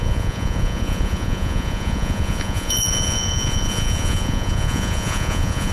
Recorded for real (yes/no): no